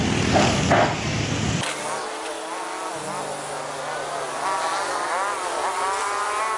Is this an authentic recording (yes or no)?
yes